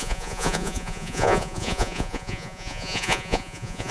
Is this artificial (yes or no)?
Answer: yes